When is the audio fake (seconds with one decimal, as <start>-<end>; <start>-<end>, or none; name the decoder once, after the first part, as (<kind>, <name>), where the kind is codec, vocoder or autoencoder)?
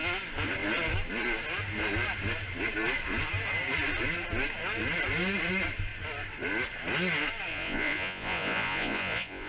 7.5-9.5 (vocoder, Vocos)